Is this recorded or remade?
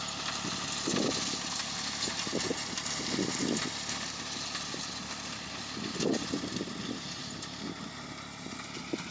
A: recorded